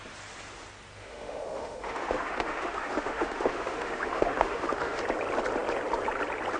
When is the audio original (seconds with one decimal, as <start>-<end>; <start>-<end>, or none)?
0.0-1.0; 5.0-6.6